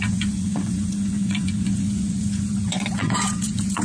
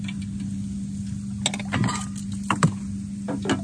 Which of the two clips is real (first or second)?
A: second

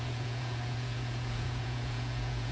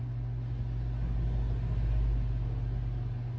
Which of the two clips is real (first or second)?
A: second